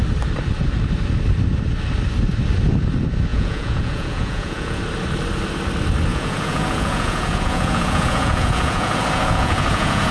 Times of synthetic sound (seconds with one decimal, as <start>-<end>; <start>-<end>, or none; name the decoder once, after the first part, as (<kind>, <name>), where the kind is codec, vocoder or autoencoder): 3.3-4.8 (vocoder, Vocos); 6.1-10.1